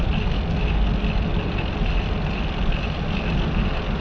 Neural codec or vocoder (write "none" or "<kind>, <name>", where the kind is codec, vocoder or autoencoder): none